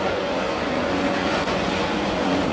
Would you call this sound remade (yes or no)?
yes